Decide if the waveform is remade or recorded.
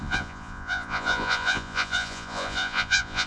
remade